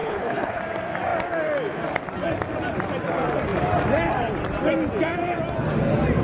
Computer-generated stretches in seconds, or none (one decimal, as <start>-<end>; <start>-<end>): 0.0-0.6